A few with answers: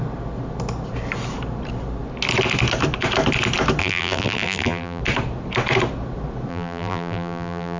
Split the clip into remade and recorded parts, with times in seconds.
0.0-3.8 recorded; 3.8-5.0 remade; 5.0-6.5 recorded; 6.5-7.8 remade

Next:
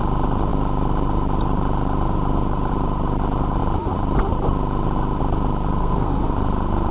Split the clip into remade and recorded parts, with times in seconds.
0.0-5.8 recorded; 5.8-6.3 remade; 6.3-6.9 recorded

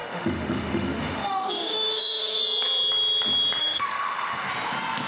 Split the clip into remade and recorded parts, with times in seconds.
0.0-2.4 remade; 2.4-3.6 recorded; 3.6-4.5 remade; 4.5-5.1 recorded

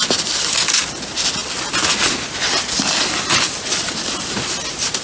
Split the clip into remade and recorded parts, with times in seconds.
0.0-5.0 recorded

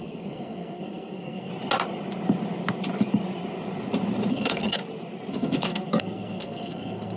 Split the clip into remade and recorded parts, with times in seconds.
0.0-1.5 remade; 1.5-4.3 recorded; 4.3-4.8 remade; 4.8-5.3 recorded; 5.3-7.2 remade